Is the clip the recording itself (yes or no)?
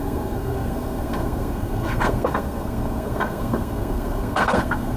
no